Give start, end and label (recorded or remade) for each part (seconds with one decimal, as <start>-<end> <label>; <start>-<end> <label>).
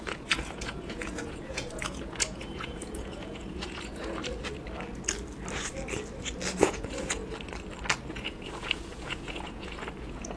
0.0-4.2 remade; 4.2-6.6 recorded; 6.6-7.2 remade; 7.2-8.1 recorded; 8.1-10.4 remade